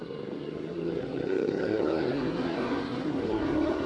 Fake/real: fake